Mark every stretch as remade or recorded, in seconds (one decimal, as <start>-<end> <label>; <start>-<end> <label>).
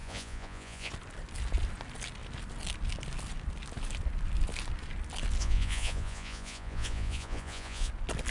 0.0-0.9 remade; 0.9-5.4 recorded; 5.4-7.9 remade; 7.9-8.3 recorded